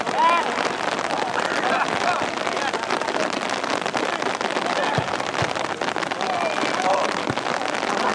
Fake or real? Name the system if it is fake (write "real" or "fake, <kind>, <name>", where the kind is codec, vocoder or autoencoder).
real